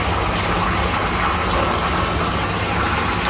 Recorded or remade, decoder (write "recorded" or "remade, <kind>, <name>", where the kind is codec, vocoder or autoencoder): recorded